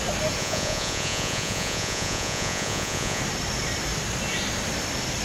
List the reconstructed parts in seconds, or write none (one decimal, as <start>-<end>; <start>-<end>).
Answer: 0.4-3.2